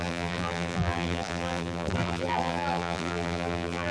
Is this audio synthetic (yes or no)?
yes